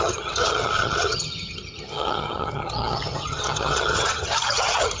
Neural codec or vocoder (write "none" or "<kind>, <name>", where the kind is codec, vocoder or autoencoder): vocoder, HiFi-GAN